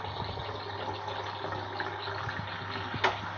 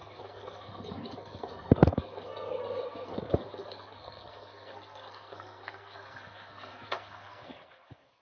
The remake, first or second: second